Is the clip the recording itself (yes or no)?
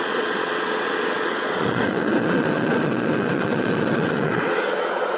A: no